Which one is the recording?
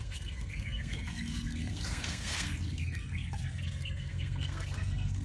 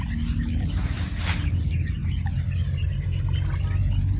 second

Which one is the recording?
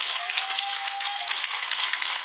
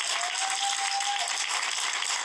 second